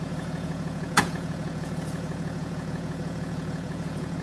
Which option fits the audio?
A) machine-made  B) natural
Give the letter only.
A